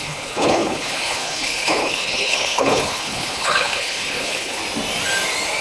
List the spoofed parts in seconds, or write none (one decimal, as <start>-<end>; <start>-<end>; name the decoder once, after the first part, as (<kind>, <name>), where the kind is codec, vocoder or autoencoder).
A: 0.0-4.6 (codec, HILCodec)